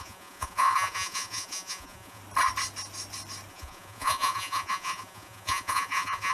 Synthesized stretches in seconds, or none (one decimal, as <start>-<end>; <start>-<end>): 0.0-2.2; 3.5-6.3